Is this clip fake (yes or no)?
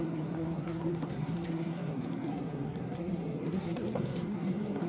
yes